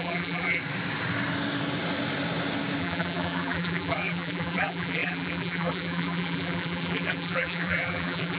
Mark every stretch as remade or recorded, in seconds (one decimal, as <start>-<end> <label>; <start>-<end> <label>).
0.0-0.6 remade; 0.6-2.8 recorded; 2.8-8.4 remade